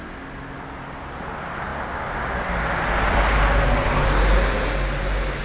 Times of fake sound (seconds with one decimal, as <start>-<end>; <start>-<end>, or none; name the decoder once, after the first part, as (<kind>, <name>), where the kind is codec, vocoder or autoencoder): none